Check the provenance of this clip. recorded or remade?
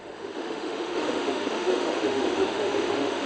remade